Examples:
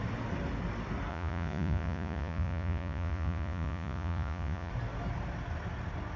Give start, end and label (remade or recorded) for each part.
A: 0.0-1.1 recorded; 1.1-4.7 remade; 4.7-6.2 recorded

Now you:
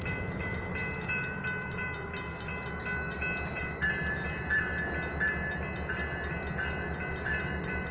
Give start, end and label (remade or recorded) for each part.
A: 0.0-2.5 remade; 2.5-3.6 recorded; 3.6-4.7 remade; 4.7-7.1 recorded; 7.1-7.9 remade

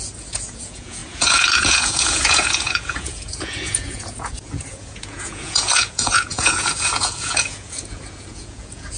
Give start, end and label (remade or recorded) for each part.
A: 0.0-9.0 remade

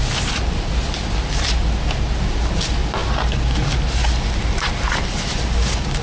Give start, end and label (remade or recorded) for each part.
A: 0.0-6.0 recorded

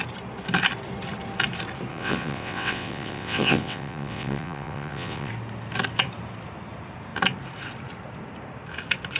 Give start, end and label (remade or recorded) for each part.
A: 0.0-1.9 recorded; 1.9-5.3 remade; 5.3-9.2 recorded

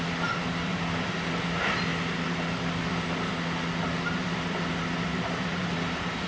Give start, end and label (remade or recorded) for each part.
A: 0.0-6.3 recorded

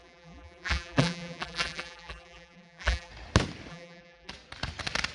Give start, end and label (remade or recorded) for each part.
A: 0.0-3.1 remade; 3.1-3.7 recorded; 3.7-4.3 remade; 4.3-5.1 recorded